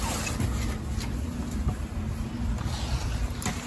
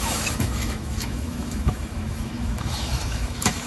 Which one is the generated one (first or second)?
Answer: second